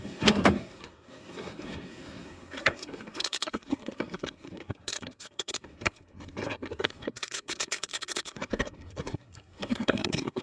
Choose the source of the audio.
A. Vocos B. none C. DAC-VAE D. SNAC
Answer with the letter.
D